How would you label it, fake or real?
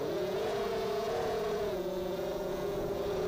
fake